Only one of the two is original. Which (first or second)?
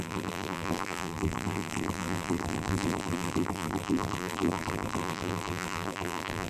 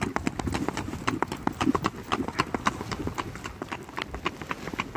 second